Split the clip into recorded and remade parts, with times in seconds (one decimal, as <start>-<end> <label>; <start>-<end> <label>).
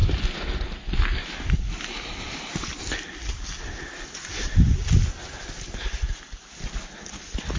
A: 0.0-7.6 recorded